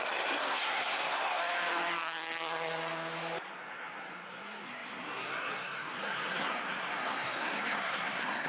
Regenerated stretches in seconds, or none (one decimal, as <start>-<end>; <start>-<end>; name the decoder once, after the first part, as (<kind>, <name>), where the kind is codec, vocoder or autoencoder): 0.0-1.4 (codec, SNAC); 3.5-8.5